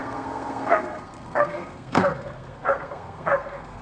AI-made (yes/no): yes